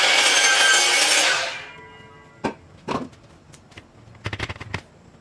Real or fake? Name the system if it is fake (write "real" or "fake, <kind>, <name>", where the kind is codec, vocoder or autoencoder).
real